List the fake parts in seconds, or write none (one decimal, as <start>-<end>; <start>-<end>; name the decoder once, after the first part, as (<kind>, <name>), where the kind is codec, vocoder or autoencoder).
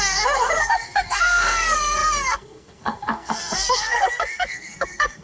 0.0-5.2 (codec, SNAC)